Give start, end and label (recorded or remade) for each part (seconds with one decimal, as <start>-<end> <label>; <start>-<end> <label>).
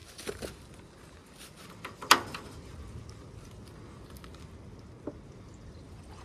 0.0-6.2 recorded